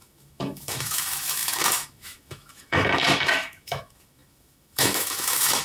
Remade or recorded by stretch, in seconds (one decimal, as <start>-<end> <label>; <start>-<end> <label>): 0.0-5.6 remade